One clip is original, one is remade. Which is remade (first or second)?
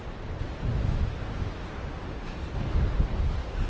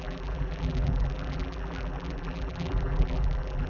second